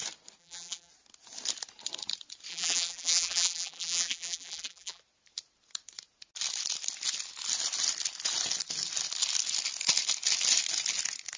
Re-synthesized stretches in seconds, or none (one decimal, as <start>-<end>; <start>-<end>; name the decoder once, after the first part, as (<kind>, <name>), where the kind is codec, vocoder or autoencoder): 0.4-0.9 (vocoder, BigVGAN v2); 2.5-5.0